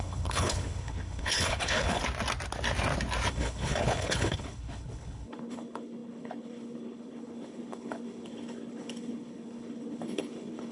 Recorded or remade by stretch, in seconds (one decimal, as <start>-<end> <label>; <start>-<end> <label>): 0.0-2.0 remade; 2.0-3.3 recorded; 3.3-10.7 remade